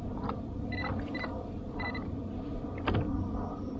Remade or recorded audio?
remade